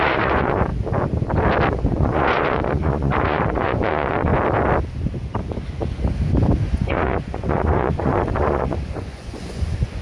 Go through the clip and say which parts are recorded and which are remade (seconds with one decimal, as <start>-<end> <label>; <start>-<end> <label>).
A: 0.0-0.7 remade; 0.7-1.7 recorded; 1.7-4.3 remade; 4.3-6.6 recorded; 6.6-10.0 remade